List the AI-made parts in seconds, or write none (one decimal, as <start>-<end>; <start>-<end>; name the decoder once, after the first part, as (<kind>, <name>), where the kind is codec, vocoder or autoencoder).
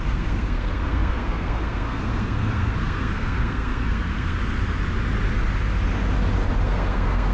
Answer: 0.0-4.4 (codec, SNAC); 6.6-7.3